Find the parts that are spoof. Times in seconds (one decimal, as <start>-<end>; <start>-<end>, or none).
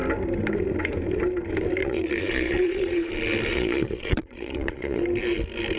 1.8-3.1; 3.5-5.0